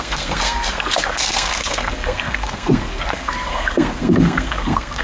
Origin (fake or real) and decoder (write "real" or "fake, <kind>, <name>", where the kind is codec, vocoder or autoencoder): fake, codec, SNAC